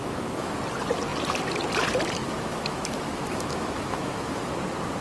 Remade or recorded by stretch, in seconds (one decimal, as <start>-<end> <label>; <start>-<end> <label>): 0.0-0.6 remade; 0.6-2.2 recorded; 2.2-4.5 remade; 4.5-5.0 recorded